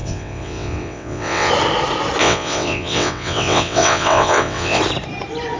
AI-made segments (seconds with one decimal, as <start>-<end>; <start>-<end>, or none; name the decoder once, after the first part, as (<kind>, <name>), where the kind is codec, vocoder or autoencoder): 0.0-1.5 (vocoder, WaveNeXt); 2.2-4.8